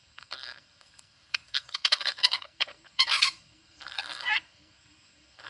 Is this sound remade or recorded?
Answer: remade